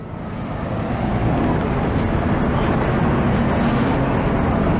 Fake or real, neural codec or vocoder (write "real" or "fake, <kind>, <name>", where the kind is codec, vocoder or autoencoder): real